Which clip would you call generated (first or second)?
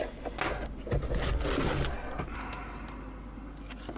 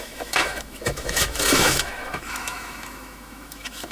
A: second